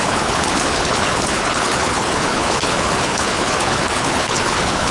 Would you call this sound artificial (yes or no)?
yes